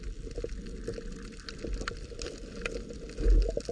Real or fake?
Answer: real